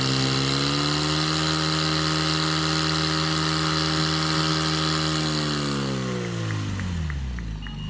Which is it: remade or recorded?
recorded